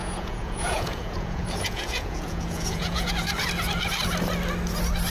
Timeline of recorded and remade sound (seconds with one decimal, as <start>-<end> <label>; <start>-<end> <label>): 0.0-3.1 remade; 3.1-5.1 recorded